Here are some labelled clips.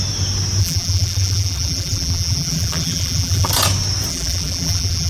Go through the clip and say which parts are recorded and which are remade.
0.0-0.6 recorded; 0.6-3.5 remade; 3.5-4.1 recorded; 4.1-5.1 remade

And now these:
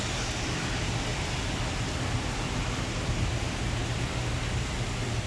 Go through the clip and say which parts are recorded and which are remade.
0.0-1.1 recorded; 1.1-2.6 remade; 2.6-5.3 recorded

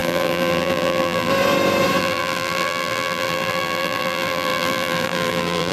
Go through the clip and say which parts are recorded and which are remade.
0.0-1.3 remade; 1.3-2.0 recorded; 2.0-5.7 remade

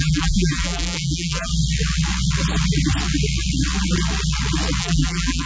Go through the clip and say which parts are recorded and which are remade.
0.0-1.5 remade; 1.5-4.8 recorded; 4.8-5.5 remade

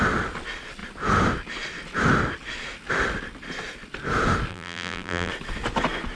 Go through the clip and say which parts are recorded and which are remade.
0.0-4.5 recorded; 4.5-5.3 remade; 5.3-6.1 recorded

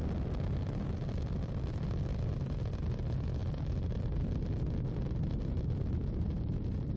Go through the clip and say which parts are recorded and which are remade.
0.0-7.0 recorded

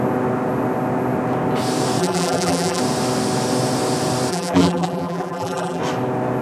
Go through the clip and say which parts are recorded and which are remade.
0.0-2.0 recorded; 2.0-2.8 remade; 2.8-4.3 recorded; 4.3-5.8 remade; 5.8-6.4 recorded